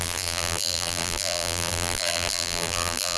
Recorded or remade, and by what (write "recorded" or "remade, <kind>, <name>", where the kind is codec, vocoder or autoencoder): remade, vocoder, BigVGAN v2